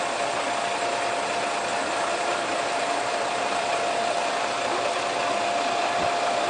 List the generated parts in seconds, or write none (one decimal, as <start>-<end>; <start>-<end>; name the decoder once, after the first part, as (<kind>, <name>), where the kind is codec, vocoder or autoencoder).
1.7-4.3 (vocoder, BigVGAN v2)